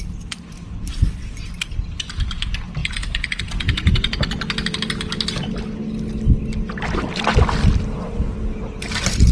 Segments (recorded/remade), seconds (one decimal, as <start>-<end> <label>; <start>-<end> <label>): 0.0-2.8 recorded; 2.8-4.3 remade; 4.3-9.3 recorded